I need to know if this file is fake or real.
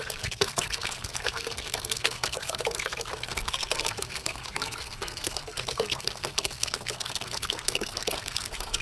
fake